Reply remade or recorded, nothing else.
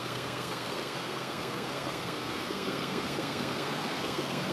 remade